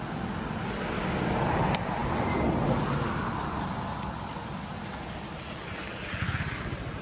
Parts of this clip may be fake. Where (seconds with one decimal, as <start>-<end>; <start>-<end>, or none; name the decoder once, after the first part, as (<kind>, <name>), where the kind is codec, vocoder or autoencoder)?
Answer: none